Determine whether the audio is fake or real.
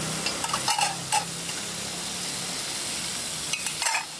real